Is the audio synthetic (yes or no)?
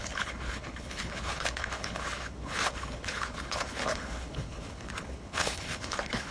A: yes